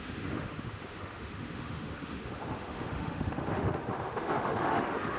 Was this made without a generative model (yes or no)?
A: no